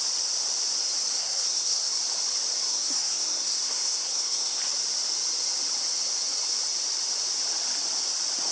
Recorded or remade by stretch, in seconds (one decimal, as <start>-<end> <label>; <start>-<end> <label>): 0.0-1.2 recorded; 1.2-2.0 remade; 2.0-2.6 recorded; 2.6-4.6 remade; 4.6-8.5 recorded